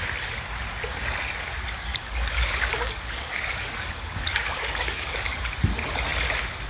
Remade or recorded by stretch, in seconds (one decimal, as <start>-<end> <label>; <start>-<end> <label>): 0.0-1.9 recorded; 1.9-5.4 remade; 5.4-6.7 recorded

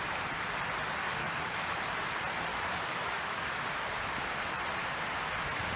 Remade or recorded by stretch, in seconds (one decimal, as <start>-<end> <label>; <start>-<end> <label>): 0.0-1.0 recorded; 1.0-1.8 remade; 1.8-2.5 recorded; 2.5-3.6 remade; 3.6-5.8 recorded

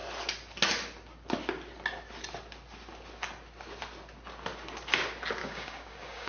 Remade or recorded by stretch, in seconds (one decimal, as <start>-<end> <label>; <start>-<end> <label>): 0.0-5.4 recorded; 5.4-6.3 remade